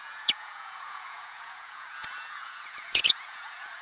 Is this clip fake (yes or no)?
yes